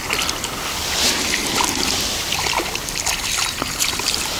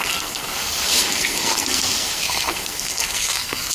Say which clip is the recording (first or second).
first